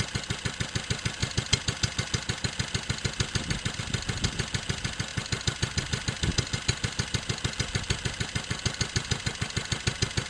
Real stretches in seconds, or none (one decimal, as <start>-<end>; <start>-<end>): 0.0-10.3